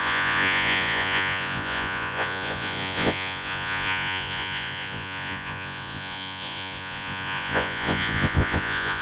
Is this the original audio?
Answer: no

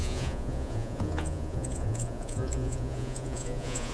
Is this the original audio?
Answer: no